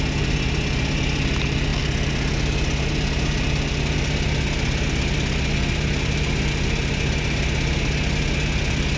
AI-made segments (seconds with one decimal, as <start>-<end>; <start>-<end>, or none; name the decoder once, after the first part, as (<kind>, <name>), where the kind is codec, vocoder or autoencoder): none